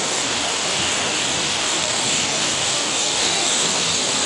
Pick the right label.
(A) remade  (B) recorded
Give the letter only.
A